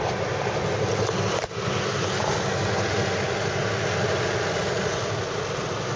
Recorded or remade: recorded